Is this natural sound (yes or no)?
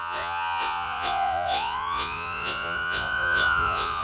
no